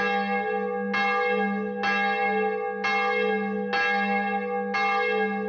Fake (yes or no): no